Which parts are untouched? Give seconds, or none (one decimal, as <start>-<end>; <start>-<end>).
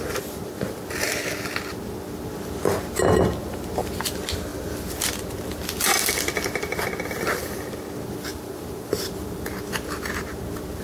0.0-8.3; 9.4-10.8